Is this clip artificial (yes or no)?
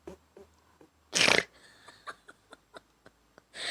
no